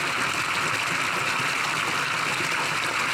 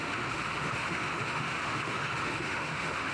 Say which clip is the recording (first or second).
first